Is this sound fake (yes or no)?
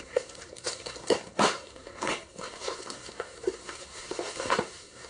yes